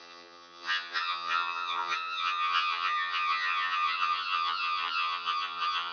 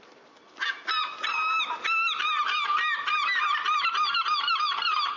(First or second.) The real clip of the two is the second